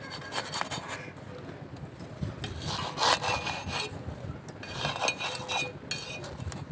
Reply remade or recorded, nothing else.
recorded